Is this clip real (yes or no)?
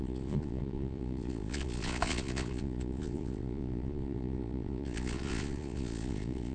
no